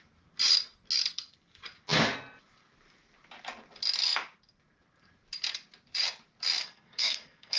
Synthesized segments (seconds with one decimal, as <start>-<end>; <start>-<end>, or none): 6.6-7.6